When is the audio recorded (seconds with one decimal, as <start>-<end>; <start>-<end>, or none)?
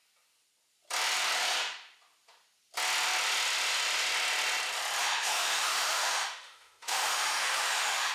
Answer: 0.0-5.0